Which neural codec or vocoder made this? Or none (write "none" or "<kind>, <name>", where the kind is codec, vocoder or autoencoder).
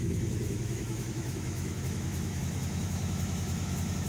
autoencoder, DAC-VAE